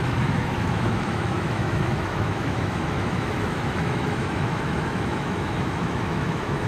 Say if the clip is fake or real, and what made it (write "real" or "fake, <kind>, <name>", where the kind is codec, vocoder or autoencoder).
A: fake, autoencoder, DAC-VAE